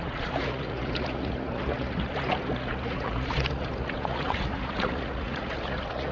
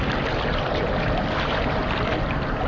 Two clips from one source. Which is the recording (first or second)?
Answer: second